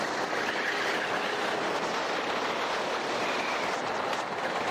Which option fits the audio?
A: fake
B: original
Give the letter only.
B